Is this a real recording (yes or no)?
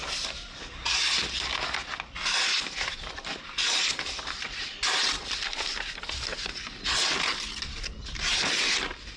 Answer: yes